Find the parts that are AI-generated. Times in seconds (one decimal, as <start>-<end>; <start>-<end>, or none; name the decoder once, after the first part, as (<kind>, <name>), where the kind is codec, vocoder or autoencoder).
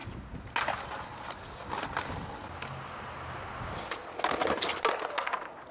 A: none